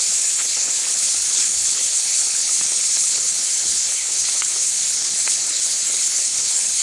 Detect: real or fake fake